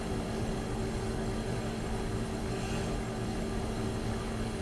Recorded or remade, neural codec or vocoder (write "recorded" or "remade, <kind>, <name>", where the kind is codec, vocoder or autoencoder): remade, codec, DAC